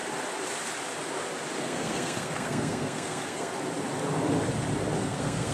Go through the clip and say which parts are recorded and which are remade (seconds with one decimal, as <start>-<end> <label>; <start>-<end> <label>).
0.0-1.6 recorded; 1.6-3.5 remade; 3.5-5.0 recorded; 5.0-5.5 remade